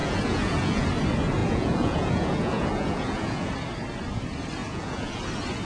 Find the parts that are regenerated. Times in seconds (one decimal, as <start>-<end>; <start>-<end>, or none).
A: 0.0-0.9; 1.4-3.5; 4.6-5.2